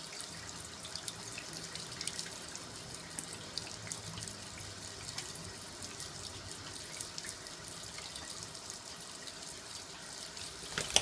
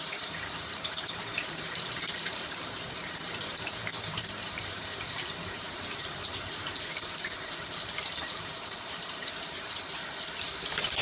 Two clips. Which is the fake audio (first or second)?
second